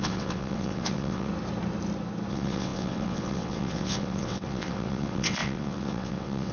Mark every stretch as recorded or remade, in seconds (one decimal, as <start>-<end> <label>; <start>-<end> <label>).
0.0-1.3 remade; 1.3-2.3 recorded; 2.3-6.5 remade